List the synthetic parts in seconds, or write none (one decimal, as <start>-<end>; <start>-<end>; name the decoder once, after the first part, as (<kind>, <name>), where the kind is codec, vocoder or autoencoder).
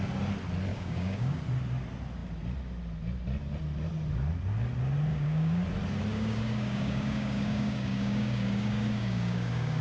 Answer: 0.7-1.4 (codec, DAC); 5.1-5.6; 6.1-9.8